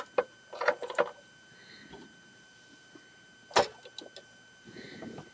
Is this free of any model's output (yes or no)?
yes